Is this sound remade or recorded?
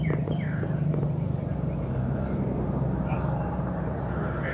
remade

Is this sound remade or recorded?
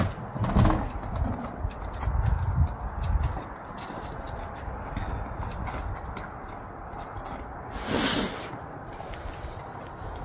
recorded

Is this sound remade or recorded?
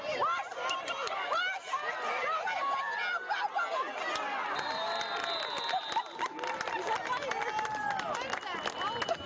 recorded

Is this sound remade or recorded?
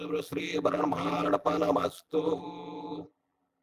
remade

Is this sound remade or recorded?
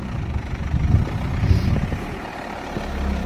recorded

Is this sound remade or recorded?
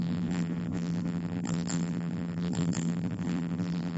remade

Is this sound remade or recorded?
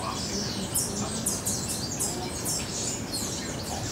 recorded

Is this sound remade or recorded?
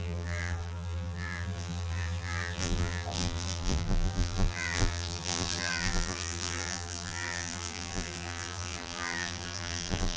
remade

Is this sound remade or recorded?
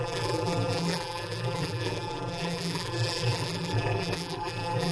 remade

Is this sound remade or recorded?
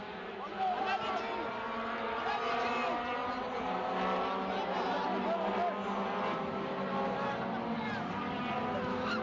recorded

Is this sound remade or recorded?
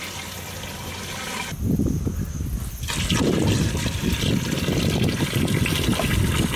recorded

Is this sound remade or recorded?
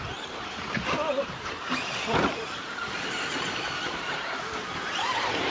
remade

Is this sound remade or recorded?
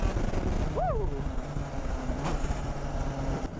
recorded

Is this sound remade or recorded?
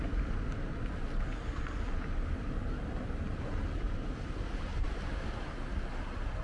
recorded